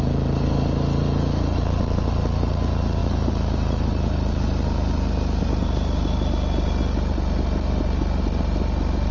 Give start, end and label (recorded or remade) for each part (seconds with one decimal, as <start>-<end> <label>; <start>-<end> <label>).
0.0-9.1 recorded